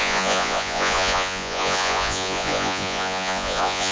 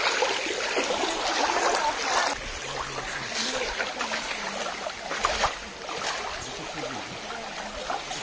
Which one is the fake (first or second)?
first